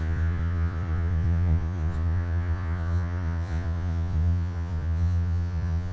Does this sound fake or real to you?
fake